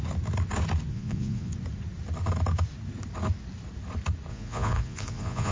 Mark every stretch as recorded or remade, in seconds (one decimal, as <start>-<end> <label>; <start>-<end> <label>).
0.0-0.9 recorded; 0.9-1.5 remade; 1.5-4.3 recorded; 4.3-5.5 remade